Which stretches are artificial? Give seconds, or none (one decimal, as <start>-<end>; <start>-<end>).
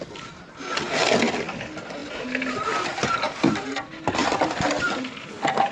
none